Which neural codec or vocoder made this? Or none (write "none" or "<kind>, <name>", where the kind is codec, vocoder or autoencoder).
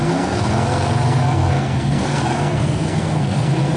codec, SNAC